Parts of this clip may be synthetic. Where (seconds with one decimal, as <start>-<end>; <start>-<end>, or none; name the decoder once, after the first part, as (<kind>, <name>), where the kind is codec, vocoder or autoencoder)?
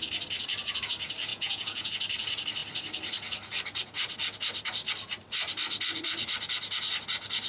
1.3-1.9 (vocoder, Vocos)